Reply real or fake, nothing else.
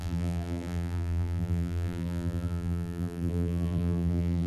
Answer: fake